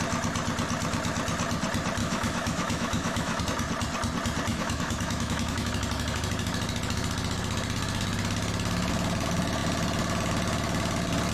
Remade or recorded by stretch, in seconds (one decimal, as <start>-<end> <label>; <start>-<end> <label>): 0.0-2.0 recorded; 2.0-3.4 remade; 3.4-4.5 recorded; 4.5-5.7 remade; 5.7-11.3 recorded